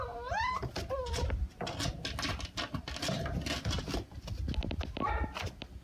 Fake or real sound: real